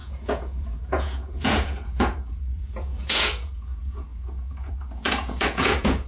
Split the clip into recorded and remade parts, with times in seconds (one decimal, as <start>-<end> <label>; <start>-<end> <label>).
0.0-6.1 remade